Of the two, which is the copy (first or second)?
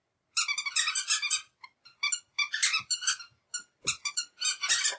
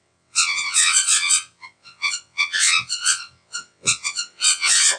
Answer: second